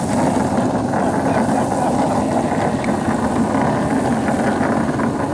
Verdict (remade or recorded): recorded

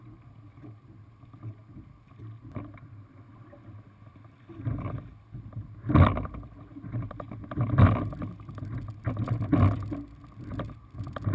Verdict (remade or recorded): recorded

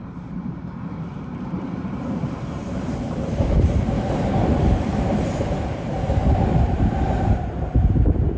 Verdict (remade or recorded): remade